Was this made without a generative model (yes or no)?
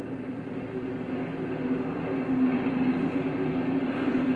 yes